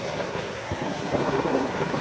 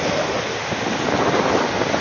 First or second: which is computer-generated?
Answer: first